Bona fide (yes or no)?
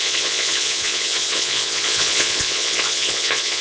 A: no